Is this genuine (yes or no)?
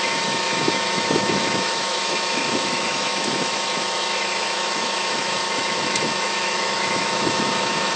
no